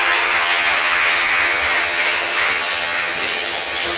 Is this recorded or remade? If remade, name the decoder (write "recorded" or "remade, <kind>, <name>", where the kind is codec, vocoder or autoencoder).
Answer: remade, vocoder, HiFi-GAN